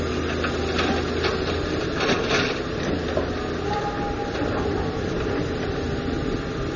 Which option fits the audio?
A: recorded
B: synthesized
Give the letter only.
A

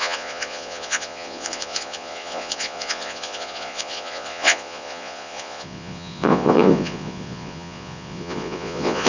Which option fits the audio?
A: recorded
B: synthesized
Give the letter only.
B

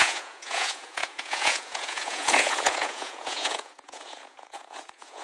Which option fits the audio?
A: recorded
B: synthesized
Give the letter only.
B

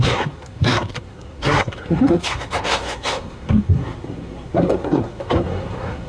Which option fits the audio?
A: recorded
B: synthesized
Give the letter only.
B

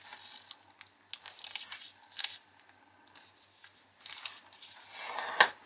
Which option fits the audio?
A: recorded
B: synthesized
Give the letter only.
A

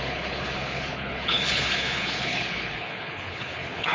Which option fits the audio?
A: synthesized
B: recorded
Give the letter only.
A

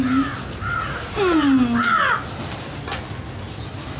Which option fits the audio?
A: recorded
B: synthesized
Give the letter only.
A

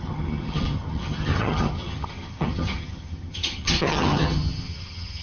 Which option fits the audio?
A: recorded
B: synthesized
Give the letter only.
B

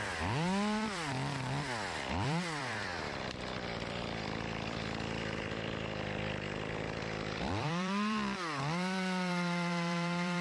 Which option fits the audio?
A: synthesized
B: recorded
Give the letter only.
A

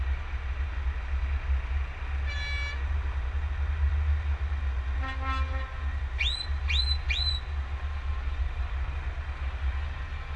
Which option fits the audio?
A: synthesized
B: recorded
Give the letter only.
B